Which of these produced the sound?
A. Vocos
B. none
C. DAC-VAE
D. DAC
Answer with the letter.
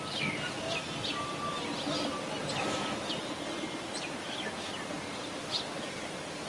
B